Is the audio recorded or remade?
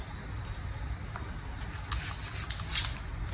recorded